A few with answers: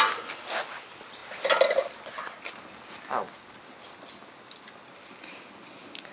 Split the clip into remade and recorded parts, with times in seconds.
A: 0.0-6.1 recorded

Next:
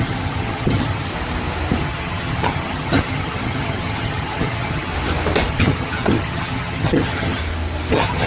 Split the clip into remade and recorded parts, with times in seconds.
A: 0.0-1.1 remade; 1.1-1.8 recorded; 1.8-4.9 remade; 4.9-5.5 recorded; 5.5-7.4 remade; 7.4-7.9 recorded; 7.9-8.3 remade

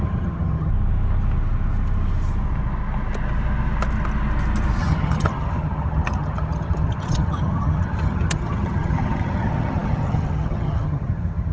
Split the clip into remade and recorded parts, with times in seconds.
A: 0.0-0.7 remade; 0.7-4.8 recorded; 4.8-11.5 remade

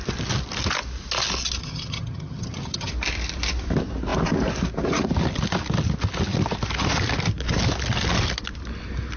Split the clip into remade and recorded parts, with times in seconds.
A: 0.0-1.6 recorded; 1.6-2.9 remade; 2.9-9.2 recorded

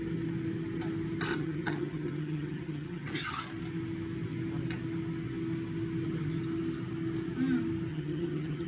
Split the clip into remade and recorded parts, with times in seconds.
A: 0.0-1.3 recorded; 1.3-3.4 remade; 3.4-7.9 recorded; 7.9-8.7 remade

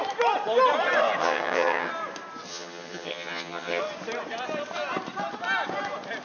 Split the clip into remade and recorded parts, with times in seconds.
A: 0.0-1.2 recorded; 1.2-1.9 remade; 1.9-2.5 recorded; 2.5-3.8 remade; 3.8-6.2 recorded

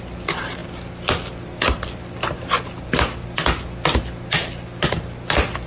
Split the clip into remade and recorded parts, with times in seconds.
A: 0.0-5.7 recorded

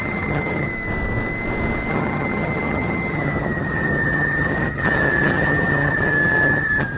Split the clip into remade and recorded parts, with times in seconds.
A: 0.0-0.7 remade; 0.7-1.9 recorded; 1.9-7.0 remade